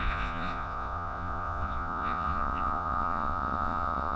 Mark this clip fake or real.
fake